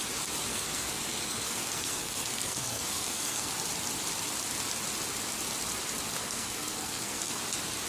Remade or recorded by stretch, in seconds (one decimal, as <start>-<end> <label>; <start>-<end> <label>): 0.0-0.5 recorded; 0.5-3.5 remade; 3.5-6.2 recorded; 6.2-7.4 remade; 7.4-7.9 recorded

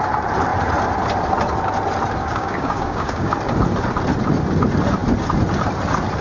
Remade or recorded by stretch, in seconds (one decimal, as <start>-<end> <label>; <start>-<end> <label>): 0.0-2.2 recorded; 2.2-3.3 remade; 3.3-6.2 recorded

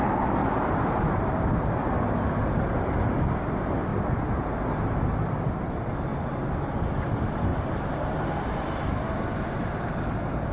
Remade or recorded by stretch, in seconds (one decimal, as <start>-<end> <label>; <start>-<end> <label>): 0.0-0.4 recorded; 0.4-1.5 remade; 1.5-6.1 recorded; 6.1-6.6 remade; 6.6-7.5 recorded; 7.5-8.9 remade; 8.9-10.5 recorded

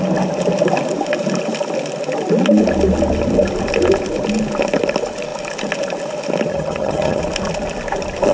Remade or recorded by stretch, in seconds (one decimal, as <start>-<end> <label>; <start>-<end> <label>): 0.0-6.5 recorded; 6.5-7.2 remade; 7.2-8.3 recorded

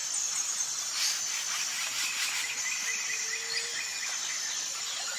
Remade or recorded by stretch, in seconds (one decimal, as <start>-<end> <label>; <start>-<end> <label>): 0.0-5.2 recorded

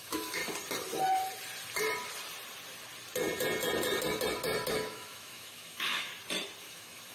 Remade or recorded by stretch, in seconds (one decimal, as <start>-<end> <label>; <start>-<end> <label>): 0.0-0.4 remade; 0.4-4.7 recorded; 4.7-6.1 remade; 6.1-6.6 recorded; 6.6-7.1 remade

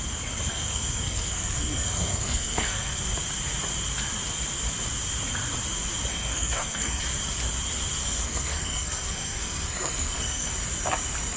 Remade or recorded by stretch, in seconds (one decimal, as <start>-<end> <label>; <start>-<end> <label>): 0.0-0.5 recorded; 0.5-3.0 remade; 3.0-6.1 recorded; 6.1-7.0 remade; 7.0-8.0 recorded; 8.0-10.5 remade; 10.5-11.4 recorded

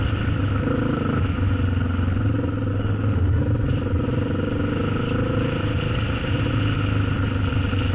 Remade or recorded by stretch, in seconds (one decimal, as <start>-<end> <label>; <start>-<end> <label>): 0.0-2.7 recorded; 2.7-3.4 remade; 3.4-7.9 recorded